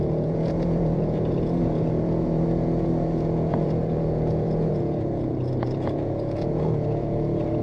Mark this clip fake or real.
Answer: fake